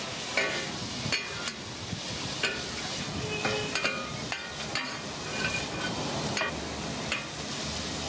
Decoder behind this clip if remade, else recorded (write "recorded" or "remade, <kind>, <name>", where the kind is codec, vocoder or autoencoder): recorded